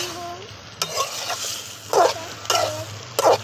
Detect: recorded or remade recorded